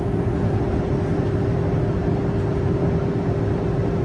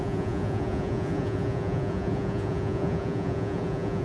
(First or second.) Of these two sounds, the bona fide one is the first